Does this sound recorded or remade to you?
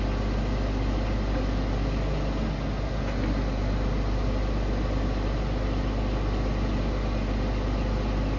recorded